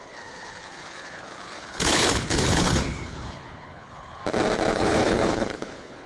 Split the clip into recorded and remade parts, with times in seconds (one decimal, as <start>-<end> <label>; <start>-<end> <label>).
0.0-4.2 remade; 4.2-4.7 recorded; 4.7-6.1 remade